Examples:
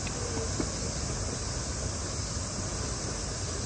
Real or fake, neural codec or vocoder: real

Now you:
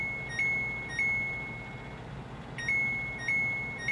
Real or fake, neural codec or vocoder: real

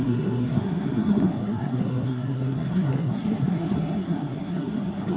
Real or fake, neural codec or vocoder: fake, codec, SNAC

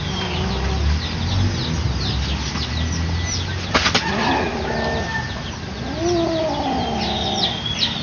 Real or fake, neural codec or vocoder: real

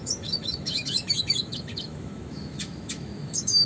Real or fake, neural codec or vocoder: fake, autoencoder, DAC-VAE